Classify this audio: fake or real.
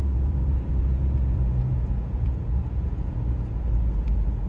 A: fake